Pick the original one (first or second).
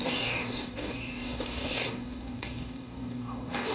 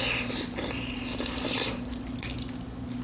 second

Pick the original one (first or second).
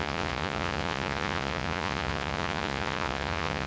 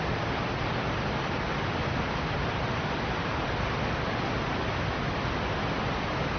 second